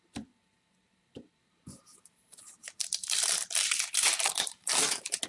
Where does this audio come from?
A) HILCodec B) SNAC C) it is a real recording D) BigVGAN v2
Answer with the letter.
D